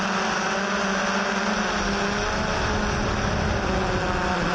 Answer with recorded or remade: recorded